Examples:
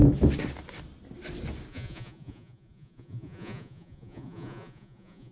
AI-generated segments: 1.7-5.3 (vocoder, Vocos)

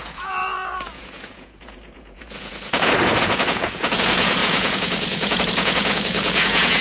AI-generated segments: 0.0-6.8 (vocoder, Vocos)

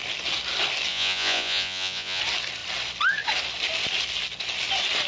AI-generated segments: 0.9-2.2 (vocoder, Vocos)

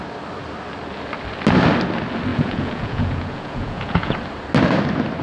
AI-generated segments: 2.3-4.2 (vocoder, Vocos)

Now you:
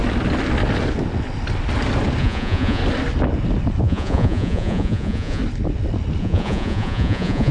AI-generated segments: 2.2-2.8 (vocoder, Vocos); 3.8-5.4; 6.2-7.5

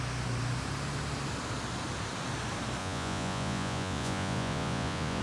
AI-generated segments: 2.8-5.2 (vocoder, Vocos)

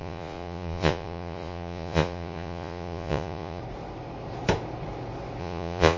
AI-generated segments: 0.0-3.6 (vocoder, Vocos); 5.4-6.0

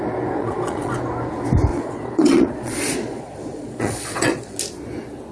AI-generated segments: 0.4-0.9 (vocoder, Vocos); 1.7-4.6